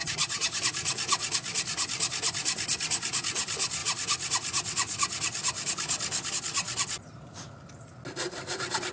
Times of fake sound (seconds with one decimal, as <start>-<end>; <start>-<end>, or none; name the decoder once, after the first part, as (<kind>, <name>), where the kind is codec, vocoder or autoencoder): 0.0-0.6 (vocoder, HiFi-GAN)